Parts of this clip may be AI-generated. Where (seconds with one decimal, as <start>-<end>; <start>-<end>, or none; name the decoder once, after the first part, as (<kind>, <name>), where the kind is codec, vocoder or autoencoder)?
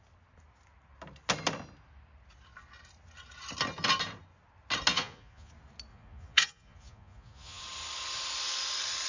4.9-5.5 (vocoder, Vocos); 5.9-7.6